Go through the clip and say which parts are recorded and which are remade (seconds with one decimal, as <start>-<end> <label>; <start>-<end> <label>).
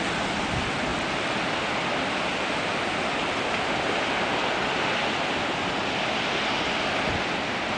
0.0-7.8 recorded